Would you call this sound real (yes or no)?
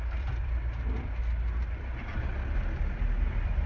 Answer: no